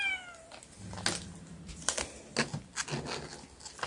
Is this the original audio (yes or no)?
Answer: yes